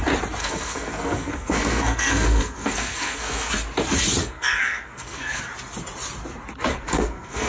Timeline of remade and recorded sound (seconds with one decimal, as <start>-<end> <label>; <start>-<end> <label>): 0.0-0.4 recorded; 0.4-3.5 remade; 3.5-4.2 recorded; 4.2-5.4 remade; 5.4-6.7 recorded; 6.7-7.5 remade